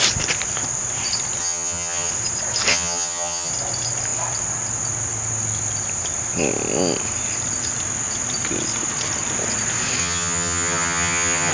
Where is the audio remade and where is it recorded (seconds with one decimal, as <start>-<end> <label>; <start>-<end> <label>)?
0.0-1.4 recorded; 1.4-2.1 remade; 2.1-2.7 recorded; 2.7-3.5 remade; 3.5-10.0 recorded; 10.0-11.5 remade